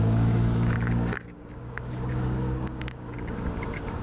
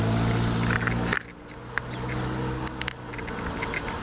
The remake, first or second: first